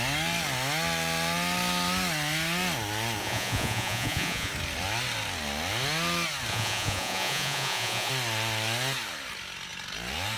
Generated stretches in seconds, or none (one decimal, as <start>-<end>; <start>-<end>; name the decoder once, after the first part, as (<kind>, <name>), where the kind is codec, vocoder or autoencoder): 3.2-4.5 (vocoder, Vocos); 6.5-8.1